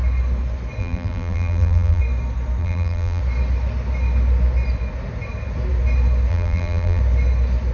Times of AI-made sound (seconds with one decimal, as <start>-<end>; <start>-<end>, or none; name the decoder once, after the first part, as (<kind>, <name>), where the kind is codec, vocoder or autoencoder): 0.8-2.0 (vocoder, BigVGAN v2); 2.6-3.2; 6.3-7.0